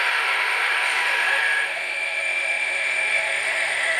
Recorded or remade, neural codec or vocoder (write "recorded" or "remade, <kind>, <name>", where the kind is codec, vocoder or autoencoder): remade, autoencoder, DAC-VAE